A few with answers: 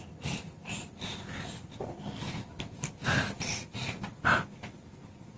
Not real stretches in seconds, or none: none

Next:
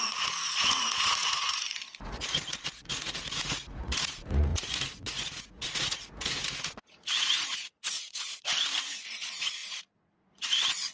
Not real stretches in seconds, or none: 0.0-10.9 (vocoder, Vocos)

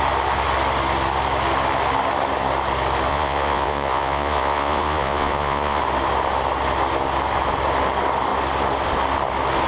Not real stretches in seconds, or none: 3.1-5.8 (vocoder, Vocos)

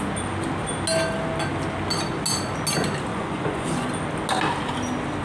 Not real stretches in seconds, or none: 3.1-3.9 (vocoder, Vocos)

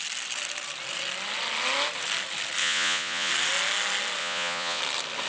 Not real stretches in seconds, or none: 2.6-3.3 (vocoder, Vocos); 4.2-4.8

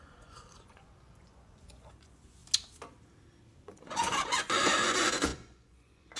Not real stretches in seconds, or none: 0.0-2.4 (vocoder, Vocos); 3.6-6.2